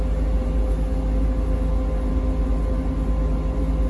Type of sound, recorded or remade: recorded